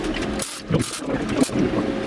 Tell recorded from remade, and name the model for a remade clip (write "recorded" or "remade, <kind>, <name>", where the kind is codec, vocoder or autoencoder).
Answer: recorded